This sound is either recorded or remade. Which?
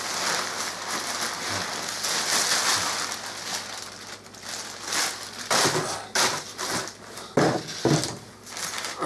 recorded